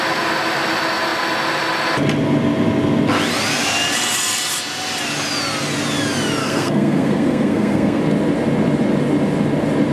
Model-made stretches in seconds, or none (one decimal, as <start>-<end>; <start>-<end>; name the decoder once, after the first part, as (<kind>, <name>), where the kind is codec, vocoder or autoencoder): 6.4-8.0 (codec, SNAC)